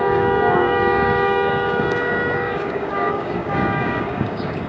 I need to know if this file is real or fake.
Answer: fake